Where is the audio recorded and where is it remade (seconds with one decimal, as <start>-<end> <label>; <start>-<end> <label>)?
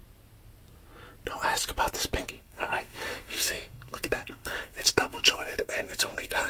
0.0-2.3 recorded; 2.3-6.5 remade